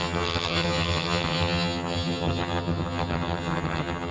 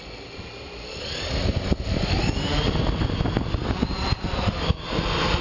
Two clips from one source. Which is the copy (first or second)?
first